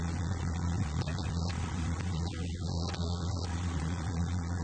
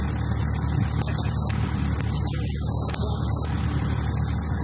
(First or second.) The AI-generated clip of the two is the first